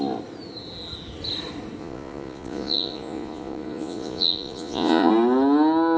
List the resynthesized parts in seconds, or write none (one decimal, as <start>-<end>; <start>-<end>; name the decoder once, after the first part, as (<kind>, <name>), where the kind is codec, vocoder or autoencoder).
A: 1.8-5.1 (vocoder, Vocos)